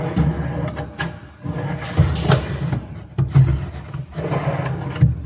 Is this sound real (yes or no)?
yes